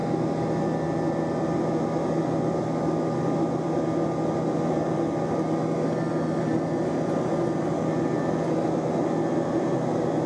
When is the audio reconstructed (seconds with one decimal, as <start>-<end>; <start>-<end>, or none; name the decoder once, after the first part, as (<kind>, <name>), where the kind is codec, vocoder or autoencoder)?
none